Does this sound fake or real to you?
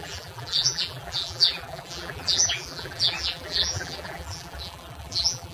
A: fake